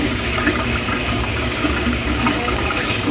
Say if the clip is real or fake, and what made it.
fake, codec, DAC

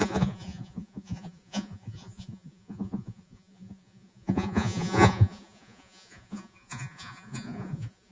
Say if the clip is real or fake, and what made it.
fake, vocoder, Vocos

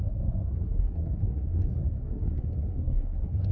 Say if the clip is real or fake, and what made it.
fake, codec, SNAC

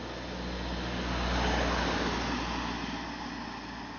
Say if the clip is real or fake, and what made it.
real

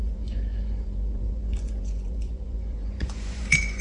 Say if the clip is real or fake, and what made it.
fake, vocoder, Vocos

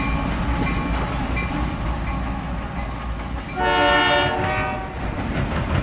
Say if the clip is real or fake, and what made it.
real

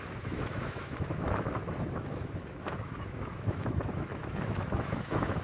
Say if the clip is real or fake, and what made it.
fake, autoencoder, DAC-VAE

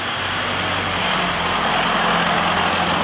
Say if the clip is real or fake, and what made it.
real